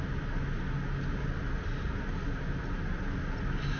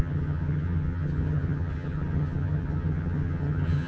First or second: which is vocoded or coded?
second